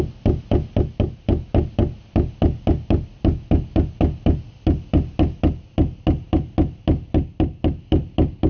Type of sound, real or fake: real